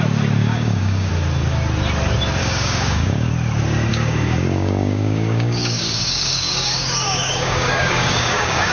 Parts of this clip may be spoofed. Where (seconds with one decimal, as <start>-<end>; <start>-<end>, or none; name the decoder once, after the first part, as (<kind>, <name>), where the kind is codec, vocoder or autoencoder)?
0.4-1.1 (codec, DAC); 2.4-3.3; 3.9-8.7